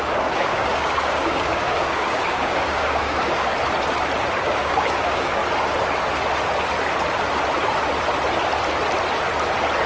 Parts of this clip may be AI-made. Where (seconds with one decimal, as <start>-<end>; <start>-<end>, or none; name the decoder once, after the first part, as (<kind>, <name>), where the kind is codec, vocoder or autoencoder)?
0.0-3.5 (codec, DAC); 4.4-5.4